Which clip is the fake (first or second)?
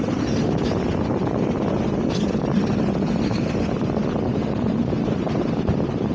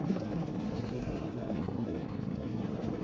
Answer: second